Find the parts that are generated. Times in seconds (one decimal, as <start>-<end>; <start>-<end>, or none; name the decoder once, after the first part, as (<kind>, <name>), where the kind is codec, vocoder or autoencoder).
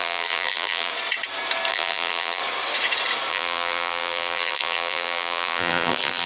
0.0-0.9 (vocoder, BigVGAN v2); 1.7-2.4; 3.3-6.3